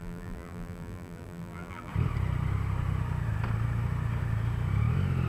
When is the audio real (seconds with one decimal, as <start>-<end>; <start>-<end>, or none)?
1.9-5.3

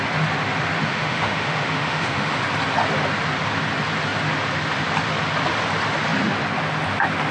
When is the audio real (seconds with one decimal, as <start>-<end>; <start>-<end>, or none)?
0.0-0.9; 2.4-7.3

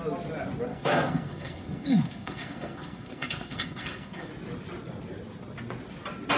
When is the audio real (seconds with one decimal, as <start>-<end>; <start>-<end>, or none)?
0.0-0.7; 4.3-6.4

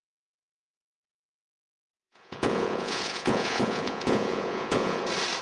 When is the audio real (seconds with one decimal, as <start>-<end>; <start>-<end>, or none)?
0.0-1.8; 5.0-5.4

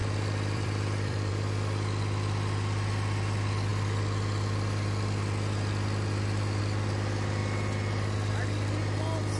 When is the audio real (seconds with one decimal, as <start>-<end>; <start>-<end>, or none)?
1.3-9.4

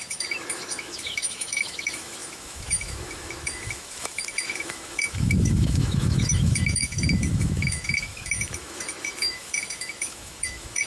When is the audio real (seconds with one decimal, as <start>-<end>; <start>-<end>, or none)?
none